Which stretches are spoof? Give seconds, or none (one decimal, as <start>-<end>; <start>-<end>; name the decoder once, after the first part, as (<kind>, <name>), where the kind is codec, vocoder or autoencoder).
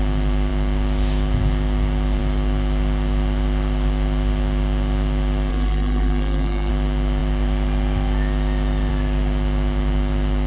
5.5-6.7 (codec, SNAC)